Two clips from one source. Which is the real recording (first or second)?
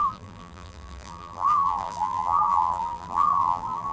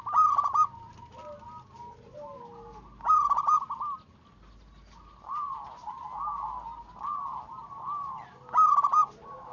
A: second